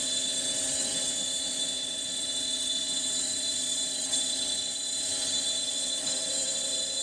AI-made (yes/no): yes